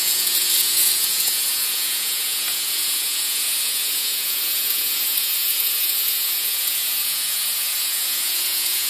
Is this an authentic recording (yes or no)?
no